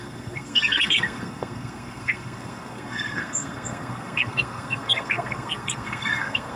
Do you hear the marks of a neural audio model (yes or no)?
yes